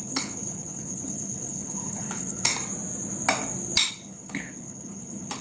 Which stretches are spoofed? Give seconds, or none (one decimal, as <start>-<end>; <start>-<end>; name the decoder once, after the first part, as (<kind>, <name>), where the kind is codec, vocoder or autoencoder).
0.0-2.5 (codec, HILCodec); 3.9-5.4